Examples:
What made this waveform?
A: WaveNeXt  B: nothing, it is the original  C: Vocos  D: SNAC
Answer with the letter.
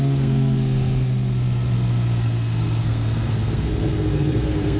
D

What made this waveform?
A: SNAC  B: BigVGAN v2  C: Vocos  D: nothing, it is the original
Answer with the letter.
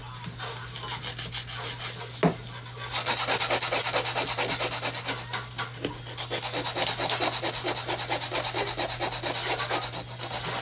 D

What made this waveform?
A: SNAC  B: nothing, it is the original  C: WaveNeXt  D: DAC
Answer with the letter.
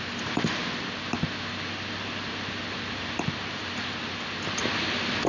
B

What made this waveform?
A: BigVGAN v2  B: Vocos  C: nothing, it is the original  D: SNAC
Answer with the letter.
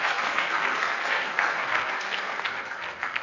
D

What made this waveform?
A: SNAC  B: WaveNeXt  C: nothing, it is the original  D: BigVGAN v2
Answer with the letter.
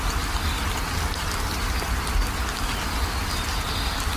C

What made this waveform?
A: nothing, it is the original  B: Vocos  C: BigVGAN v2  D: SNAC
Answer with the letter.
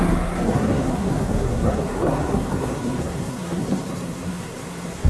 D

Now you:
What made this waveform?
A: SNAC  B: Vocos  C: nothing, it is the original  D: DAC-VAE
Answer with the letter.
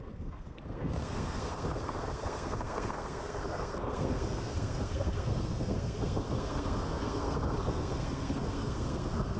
A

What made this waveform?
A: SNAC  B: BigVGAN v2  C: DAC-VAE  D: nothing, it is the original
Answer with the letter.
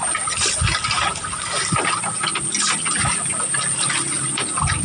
D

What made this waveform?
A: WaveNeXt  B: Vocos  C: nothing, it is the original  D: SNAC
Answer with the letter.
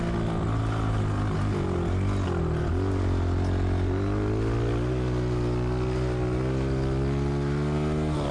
C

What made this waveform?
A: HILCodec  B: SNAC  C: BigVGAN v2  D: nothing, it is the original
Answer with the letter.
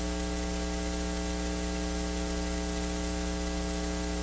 D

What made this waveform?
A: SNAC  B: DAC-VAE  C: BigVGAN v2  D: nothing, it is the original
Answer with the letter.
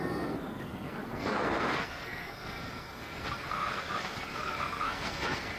A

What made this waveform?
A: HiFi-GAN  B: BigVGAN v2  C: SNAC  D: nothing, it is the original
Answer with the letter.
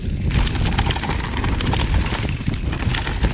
D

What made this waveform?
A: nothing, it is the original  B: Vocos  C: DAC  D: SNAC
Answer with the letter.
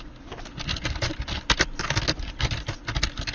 A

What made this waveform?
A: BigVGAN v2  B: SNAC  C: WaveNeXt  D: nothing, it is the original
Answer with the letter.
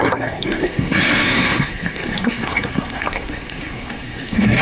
B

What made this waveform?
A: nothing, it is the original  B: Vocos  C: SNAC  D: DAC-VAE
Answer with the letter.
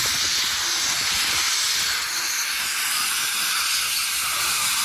A